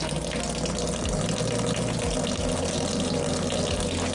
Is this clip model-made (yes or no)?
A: no